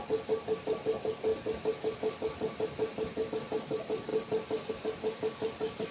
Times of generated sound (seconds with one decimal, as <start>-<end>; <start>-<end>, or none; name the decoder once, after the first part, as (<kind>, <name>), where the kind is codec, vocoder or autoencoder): 0.0-1.3 (vocoder, BigVGAN v2); 3.3-4.1; 4.7-5.9